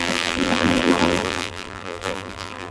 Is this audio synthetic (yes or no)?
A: yes